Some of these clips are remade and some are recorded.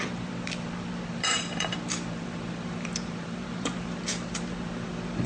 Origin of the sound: remade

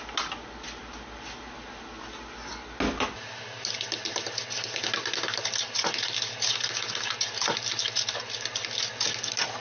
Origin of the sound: recorded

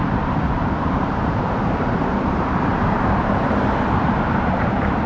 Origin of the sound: remade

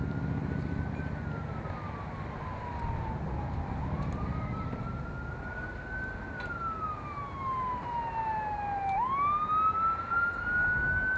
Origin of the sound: recorded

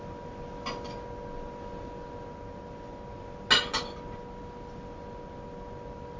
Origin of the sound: recorded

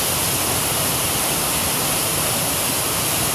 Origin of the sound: recorded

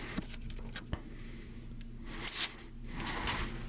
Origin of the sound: recorded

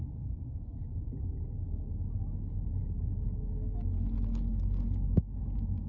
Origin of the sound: recorded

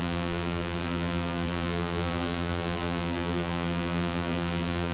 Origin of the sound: remade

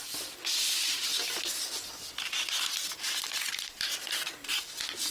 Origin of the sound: recorded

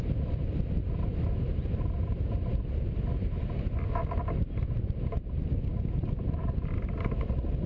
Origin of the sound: recorded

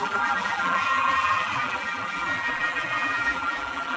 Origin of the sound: remade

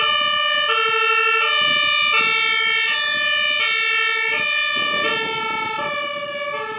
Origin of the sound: recorded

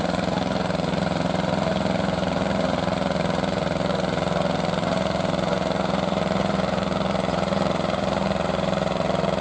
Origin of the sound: remade